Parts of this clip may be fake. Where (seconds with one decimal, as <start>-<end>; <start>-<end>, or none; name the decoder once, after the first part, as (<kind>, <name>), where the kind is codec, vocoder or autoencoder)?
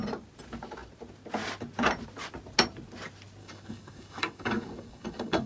3.4-5.5 (codec, DAC)